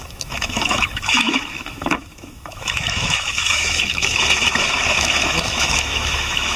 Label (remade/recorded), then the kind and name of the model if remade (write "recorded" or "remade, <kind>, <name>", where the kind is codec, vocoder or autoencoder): remade, autoencoder, DAC-VAE